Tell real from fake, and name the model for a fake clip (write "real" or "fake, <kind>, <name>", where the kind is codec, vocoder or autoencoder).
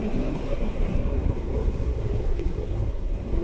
fake, codec, SNAC